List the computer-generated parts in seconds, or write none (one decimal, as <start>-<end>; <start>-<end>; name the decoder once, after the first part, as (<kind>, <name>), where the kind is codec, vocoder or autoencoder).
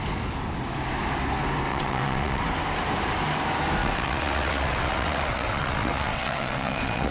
1.7-2.4 (vocoder, WaveNeXt); 3.8-7.1